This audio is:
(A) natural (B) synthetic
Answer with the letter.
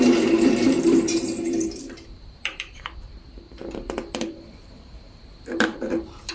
B